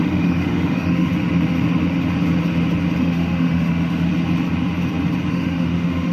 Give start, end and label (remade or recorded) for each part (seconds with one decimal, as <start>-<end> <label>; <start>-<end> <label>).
0.0-1.1 remade; 1.1-3.0 recorded; 3.0-4.1 remade; 4.1-5.3 recorded; 5.3-6.1 remade

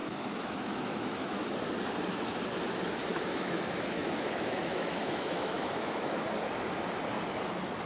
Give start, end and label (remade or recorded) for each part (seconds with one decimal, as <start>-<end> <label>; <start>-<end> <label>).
0.0-1.4 remade; 1.4-3.1 recorded; 3.1-6.2 remade; 6.2-7.9 recorded